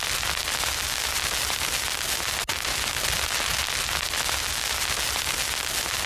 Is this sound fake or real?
real